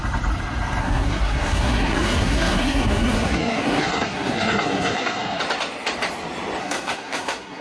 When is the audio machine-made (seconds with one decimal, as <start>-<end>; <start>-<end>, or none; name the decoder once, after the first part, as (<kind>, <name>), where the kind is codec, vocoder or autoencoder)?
0.8-5.4 (codec, SNAC); 6.6-7.6